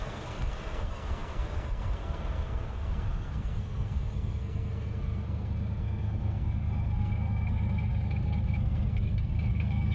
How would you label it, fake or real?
fake